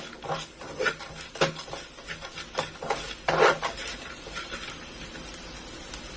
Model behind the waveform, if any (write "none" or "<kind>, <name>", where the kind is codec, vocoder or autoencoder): none